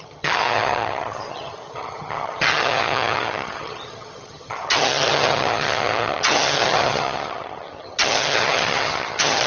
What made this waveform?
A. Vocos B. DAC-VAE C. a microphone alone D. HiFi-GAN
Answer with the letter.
D